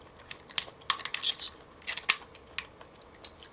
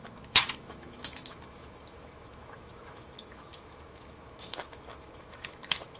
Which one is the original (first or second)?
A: first